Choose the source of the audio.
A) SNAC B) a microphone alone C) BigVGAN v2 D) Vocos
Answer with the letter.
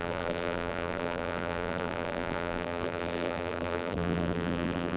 C